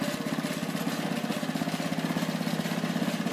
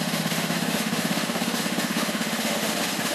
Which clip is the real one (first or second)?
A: first